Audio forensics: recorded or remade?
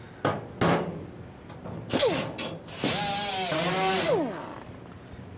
recorded